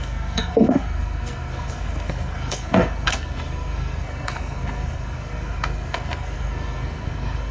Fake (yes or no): yes